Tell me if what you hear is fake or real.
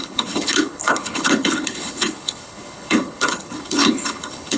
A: fake